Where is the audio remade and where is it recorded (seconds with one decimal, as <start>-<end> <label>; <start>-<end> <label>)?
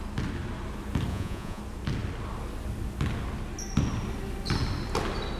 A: 0.0-1.1 recorded; 1.1-1.6 remade; 1.6-5.4 recorded